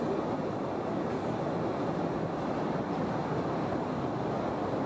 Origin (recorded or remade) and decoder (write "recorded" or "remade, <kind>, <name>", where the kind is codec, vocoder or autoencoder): recorded